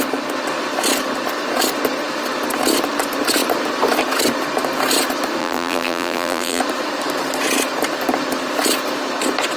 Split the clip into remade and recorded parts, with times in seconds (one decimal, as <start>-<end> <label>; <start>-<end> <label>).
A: 0.0-5.4 recorded; 5.4-6.6 remade; 6.6-9.6 recorded